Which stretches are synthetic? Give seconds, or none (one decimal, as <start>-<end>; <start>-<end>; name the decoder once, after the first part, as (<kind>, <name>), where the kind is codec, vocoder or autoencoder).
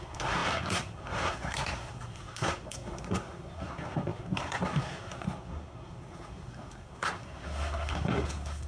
0.0-8.7 (codec, SNAC)